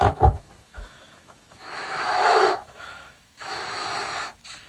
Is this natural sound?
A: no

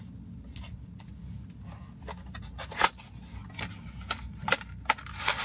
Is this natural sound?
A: yes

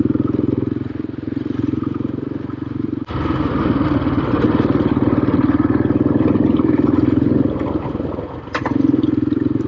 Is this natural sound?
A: yes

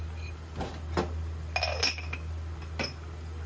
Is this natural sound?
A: yes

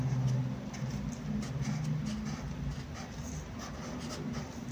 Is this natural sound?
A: yes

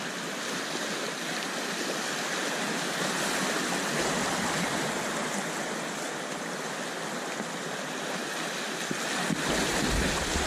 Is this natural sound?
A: yes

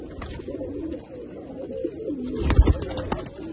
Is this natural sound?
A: yes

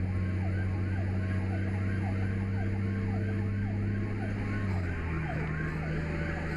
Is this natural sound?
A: yes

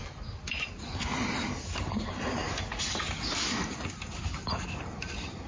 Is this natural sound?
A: yes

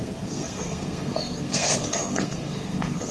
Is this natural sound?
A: no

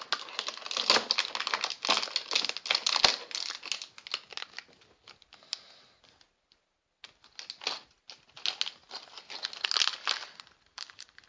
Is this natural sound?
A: yes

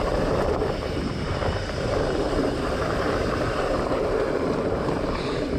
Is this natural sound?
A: no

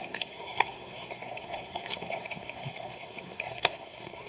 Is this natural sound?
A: no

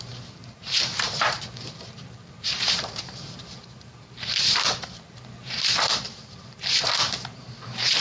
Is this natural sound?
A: no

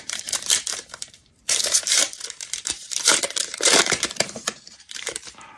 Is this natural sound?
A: no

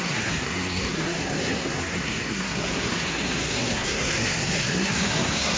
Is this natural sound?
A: no